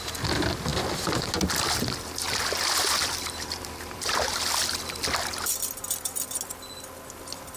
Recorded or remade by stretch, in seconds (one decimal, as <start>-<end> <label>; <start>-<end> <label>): 0.0-3.0 recorded; 3.0-4.3 remade; 4.3-7.6 recorded